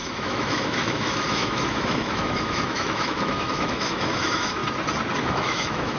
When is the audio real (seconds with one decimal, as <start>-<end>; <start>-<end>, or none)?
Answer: 4.6-5.2